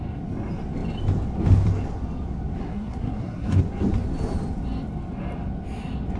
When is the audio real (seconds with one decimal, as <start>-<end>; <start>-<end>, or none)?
0.0-2.6; 3.6-6.2